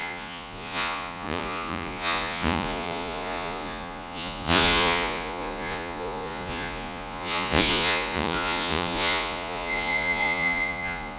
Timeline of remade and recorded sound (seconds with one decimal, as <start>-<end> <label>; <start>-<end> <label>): 0.0-11.2 remade